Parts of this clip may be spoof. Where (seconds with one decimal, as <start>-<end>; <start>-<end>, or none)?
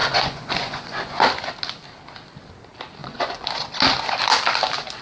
0.0-1.2; 3.0-3.5